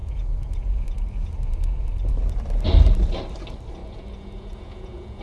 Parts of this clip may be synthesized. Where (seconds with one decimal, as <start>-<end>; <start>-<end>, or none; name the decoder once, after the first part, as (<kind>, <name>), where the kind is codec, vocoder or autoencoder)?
0.0-2.1 (vocoder, Vocos); 3.8-5.2